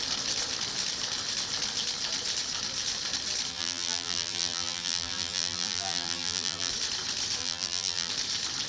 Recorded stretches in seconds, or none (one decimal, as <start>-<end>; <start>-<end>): 0.0-3.5; 6.7-7.4; 8.1-8.7